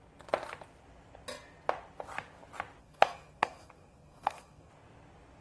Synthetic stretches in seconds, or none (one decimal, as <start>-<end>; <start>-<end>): 2.8-4.7